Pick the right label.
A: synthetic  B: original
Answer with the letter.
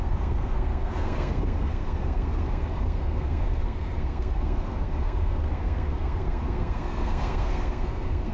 A